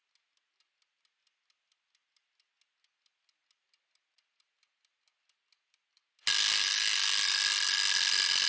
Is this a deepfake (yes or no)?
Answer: no